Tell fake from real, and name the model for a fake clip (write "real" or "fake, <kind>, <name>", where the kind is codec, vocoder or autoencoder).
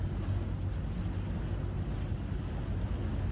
real